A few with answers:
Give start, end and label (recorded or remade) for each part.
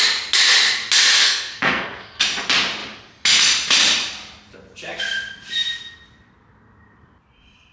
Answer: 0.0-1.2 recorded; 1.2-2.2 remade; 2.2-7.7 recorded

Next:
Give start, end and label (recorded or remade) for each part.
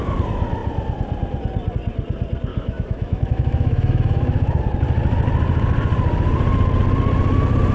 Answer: 0.0-2.5 recorded; 2.5-4.6 remade; 4.6-7.7 recorded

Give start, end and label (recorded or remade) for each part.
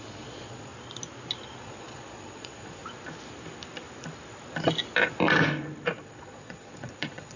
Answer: 0.0-0.7 remade; 0.7-1.6 recorded; 1.6-2.8 remade; 2.8-5.9 recorded; 5.9-7.4 remade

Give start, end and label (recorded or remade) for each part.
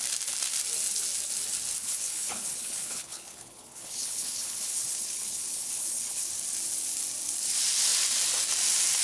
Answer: 0.0-1.8 recorded; 1.8-6.3 remade; 6.3-9.0 recorded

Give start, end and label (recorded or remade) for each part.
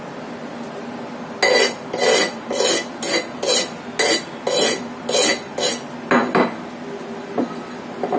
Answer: 0.0-8.2 recorded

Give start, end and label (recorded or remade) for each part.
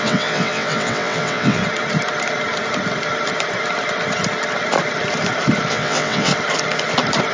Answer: 0.0-1.6 remade; 1.6-5.7 recorded; 5.7-6.3 remade; 6.3-7.3 recorded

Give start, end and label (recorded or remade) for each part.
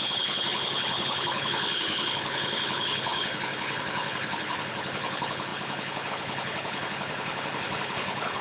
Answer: 0.0-8.4 remade